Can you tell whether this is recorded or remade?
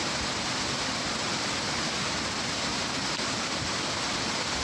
remade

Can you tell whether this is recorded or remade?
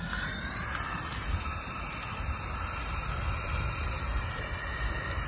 recorded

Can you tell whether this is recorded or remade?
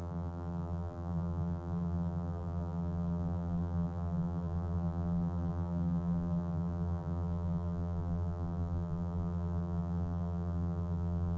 remade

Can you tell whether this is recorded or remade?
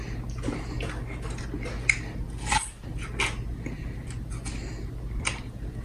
recorded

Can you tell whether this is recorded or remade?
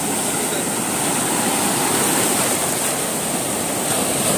recorded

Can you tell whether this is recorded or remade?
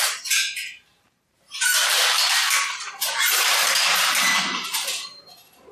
remade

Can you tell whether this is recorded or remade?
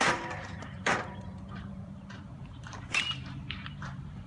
remade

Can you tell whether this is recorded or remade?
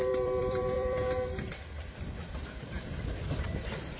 remade